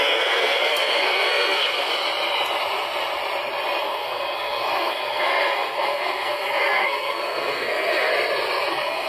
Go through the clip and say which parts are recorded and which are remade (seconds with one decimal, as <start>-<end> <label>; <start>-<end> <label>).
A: 0.0-1.9 remade; 1.9-3.8 recorded; 3.8-8.1 remade; 8.1-8.7 recorded; 8.7-9.1 remade